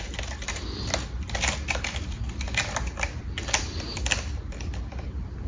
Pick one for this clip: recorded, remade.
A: recorded